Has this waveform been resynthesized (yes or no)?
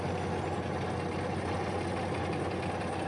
no